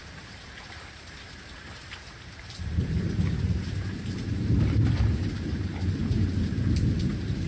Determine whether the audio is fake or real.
fake